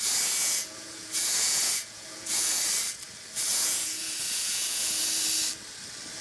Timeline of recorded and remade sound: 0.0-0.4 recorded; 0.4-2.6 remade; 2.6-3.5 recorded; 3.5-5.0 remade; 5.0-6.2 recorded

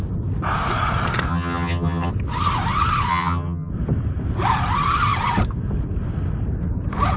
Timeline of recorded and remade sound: 0.0-1.3 recorded; 1.3-2.1 remade; 2.1-3.1 recorded; 3.1-3.7 remade; 3.7-7.2 recorded